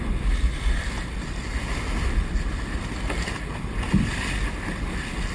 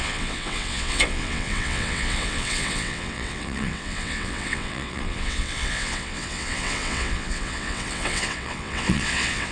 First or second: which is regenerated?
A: second